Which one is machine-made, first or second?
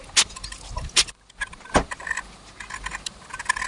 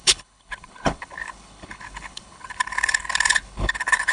second